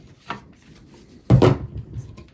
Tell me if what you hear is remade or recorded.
recorded